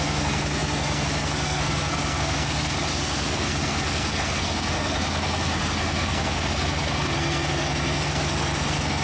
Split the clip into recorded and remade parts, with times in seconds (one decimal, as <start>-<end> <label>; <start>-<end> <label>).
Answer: 0.0-9.0 remade